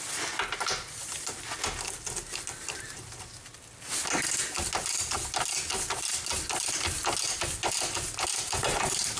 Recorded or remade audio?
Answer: recorded